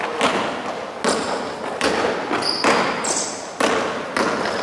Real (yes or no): yes